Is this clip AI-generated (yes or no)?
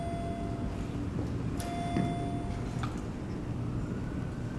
no